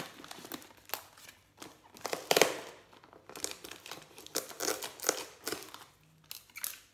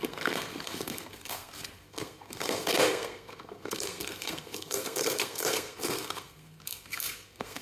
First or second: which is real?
first